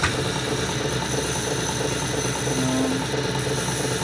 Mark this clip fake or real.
real